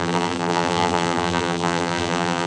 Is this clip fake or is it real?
fake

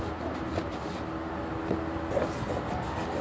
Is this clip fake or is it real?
real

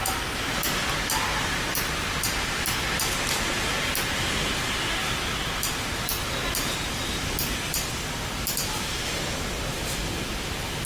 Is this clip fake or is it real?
real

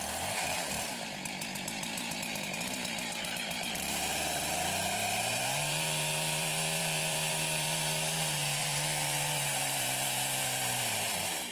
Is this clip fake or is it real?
fake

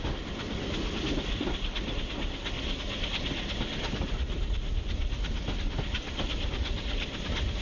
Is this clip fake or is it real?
fake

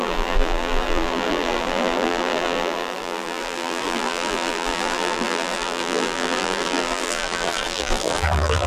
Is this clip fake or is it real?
fake